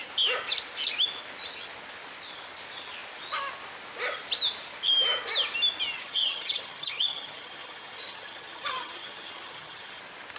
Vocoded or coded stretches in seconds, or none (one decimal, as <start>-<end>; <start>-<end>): 6.0-10.0